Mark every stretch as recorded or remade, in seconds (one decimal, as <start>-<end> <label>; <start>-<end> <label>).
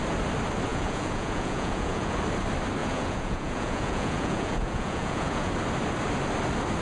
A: 0.0-0.7 recorded; 0.7-2.2 remade; 2.2-2.8 recorded; 2.8-5.5 remade; 5.5-6.8 recorded